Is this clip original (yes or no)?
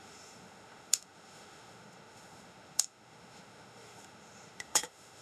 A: no